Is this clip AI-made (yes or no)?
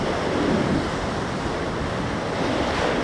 no